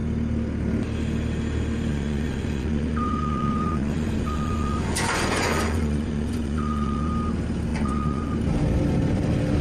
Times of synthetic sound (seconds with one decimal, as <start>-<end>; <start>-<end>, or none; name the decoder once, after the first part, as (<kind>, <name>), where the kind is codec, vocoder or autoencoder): 1.9-7.1 (vocoder, Vocos); 7.7-8.3